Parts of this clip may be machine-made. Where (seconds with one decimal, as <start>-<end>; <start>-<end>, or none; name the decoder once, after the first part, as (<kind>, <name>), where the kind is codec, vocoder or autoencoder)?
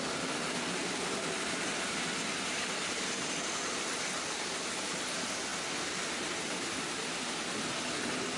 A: 0.0-5.5 (vocoder, BigVGAN v2); 6.2-8.4